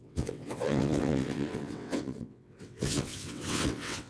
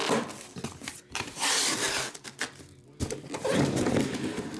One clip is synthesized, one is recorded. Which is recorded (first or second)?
second